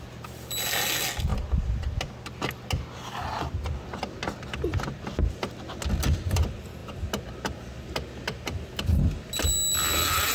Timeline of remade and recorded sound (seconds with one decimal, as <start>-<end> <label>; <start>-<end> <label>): 0.0-10.3 recorded